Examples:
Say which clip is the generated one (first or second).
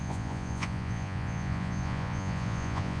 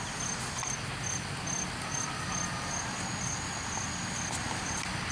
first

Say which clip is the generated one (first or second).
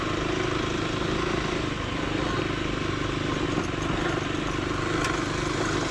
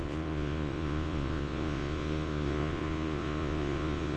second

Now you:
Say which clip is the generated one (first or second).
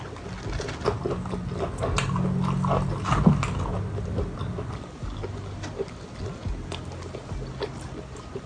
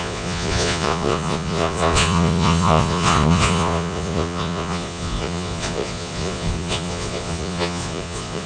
second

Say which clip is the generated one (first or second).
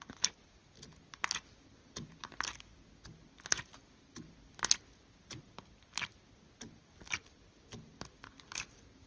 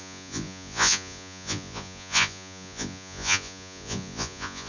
second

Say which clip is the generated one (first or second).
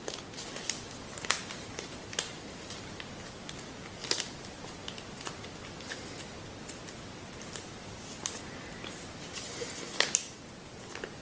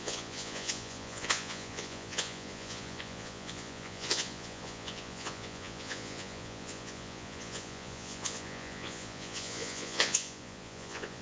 second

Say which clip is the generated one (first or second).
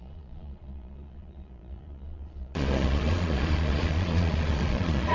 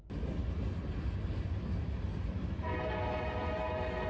first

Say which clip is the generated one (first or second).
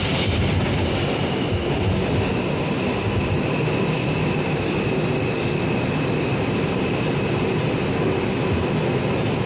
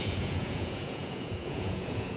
second